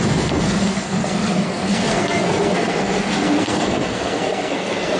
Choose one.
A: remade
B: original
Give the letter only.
A